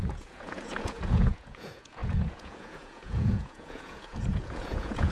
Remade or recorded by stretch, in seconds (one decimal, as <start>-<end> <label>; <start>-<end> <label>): 0.0-5.1 remade